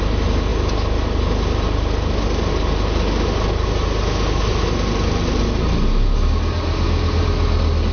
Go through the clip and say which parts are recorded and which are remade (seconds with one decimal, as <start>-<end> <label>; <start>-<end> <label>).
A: 0.0-7.9 recorded